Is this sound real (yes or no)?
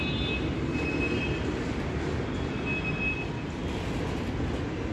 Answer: yes